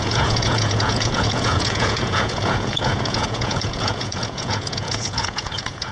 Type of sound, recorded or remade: remade